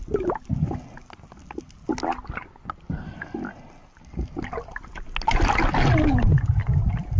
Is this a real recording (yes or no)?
yes